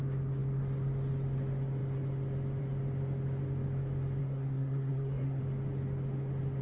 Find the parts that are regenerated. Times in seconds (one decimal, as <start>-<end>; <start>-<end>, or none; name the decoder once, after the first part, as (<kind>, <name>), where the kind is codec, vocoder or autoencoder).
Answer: 4.2-5.4 (codec, SNAC)